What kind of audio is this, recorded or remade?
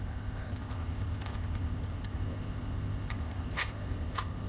remade